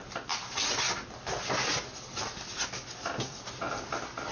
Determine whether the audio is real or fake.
real